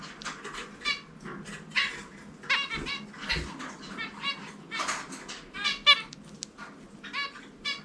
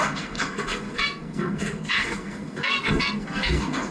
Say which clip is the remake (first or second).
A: second